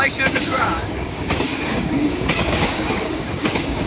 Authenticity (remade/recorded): remade